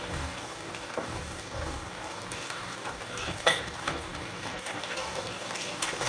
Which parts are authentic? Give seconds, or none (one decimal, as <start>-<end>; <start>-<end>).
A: none